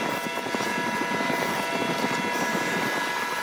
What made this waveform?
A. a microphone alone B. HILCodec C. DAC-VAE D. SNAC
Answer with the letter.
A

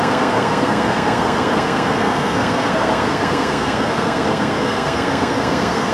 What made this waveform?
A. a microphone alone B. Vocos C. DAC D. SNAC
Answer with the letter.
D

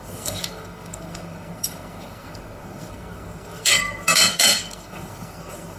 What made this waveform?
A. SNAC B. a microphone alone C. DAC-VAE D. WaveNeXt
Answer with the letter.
A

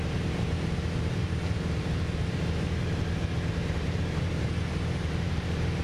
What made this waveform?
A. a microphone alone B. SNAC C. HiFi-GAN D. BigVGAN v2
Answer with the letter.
D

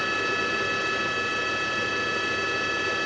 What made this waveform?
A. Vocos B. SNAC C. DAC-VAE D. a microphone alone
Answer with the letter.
D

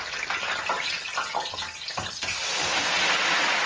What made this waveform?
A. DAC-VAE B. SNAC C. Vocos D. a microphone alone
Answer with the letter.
D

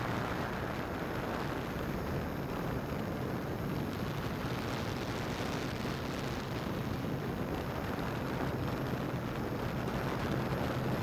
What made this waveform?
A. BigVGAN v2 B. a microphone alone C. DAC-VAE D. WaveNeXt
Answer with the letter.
B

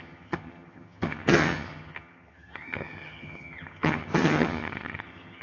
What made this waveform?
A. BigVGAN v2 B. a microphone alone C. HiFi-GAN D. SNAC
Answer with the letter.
C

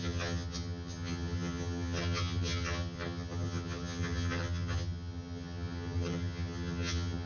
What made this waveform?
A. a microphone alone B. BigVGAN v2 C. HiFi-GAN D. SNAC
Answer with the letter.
C